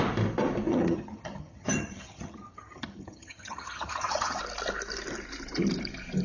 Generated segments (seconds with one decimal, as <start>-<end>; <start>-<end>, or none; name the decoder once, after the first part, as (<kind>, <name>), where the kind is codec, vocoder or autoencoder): 0.7-4.4 (vocoder, HiFi-GAN)